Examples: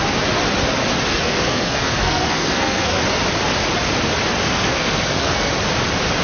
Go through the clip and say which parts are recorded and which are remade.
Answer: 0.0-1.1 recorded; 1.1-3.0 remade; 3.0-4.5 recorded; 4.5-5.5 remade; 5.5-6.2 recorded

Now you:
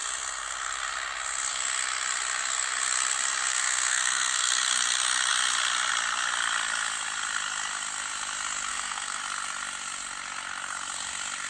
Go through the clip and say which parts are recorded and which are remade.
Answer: 0.0-3.5 recorded; 3.5-4.5 remade; 4.5-8.7 recorded; 8.7-9.2 remade; 9.2-11.5 recorded